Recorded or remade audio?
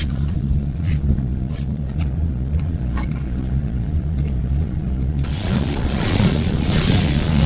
remade